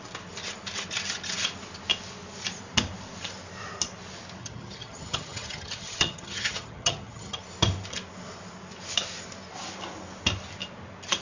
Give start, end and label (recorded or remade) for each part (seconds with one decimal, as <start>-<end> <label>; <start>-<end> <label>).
0.0-4.4 recorded; 4.4-7.4 remade; 7.4-11.2 recorded